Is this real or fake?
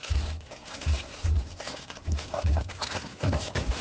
fake